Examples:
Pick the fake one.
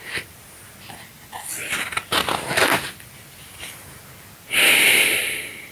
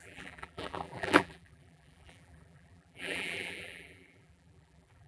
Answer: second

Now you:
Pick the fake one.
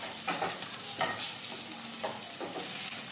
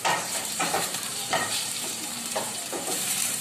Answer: second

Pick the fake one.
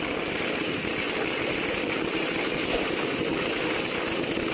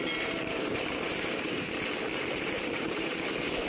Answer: second